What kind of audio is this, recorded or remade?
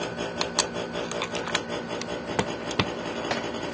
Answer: recorded